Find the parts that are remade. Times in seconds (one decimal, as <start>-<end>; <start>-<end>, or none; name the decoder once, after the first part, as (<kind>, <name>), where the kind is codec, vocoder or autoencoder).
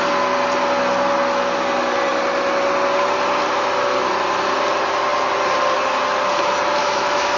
6.8-7.4 (autoencoder, DAC-VAE)